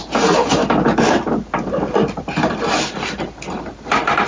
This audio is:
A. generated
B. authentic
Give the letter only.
B